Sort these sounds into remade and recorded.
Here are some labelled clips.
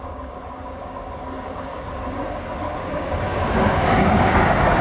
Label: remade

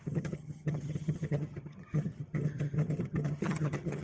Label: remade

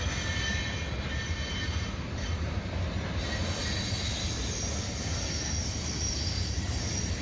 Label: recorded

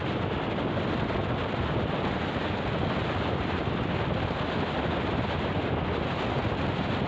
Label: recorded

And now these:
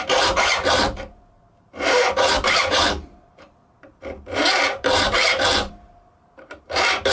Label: remade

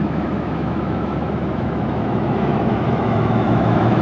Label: remade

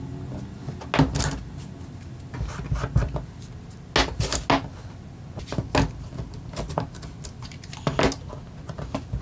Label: recorded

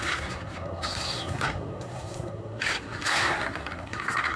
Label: remade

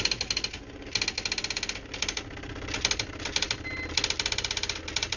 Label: recorded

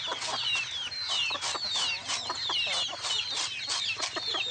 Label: recorded